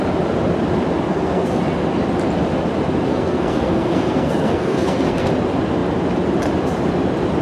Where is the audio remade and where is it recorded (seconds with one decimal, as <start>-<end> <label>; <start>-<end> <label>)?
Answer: 0.0-1.1 recorded; 1.1-1.6 remade; 1.6-3.1 recorded; 3.1-5.3 remade; 5.3-7.4 recorded